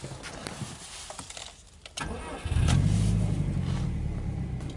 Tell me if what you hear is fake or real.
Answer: real